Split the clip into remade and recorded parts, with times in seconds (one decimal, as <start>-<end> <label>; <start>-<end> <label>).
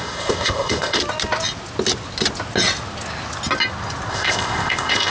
0.0-1.0 remade; 1.0-4.1 recorded; 4.1-5.1 remade